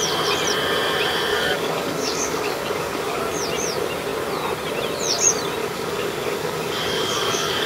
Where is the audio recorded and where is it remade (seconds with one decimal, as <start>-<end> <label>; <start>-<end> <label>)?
0.0-1.3 recorded; 1.3-3.2 remade; 3.2-5.6 recorded; 5.6-7.7 remade